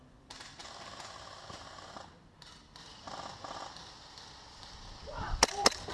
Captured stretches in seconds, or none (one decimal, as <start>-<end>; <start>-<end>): 0.0-5.9